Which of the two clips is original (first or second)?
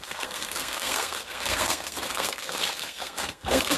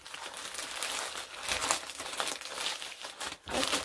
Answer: second